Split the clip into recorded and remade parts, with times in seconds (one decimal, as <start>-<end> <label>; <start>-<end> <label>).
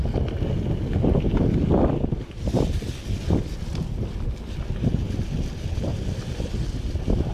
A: 0.0-7.3 recorded